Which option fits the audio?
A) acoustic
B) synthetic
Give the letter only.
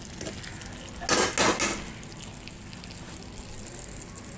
A